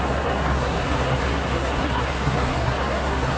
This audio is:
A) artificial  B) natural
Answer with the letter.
A